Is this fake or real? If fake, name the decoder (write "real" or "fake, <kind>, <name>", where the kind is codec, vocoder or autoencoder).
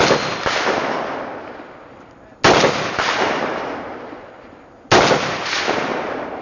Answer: real